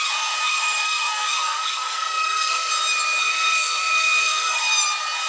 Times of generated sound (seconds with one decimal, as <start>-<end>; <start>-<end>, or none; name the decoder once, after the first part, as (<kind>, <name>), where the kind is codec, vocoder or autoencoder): 0.5-2.7 (codec, SNAC); 3.2-4.6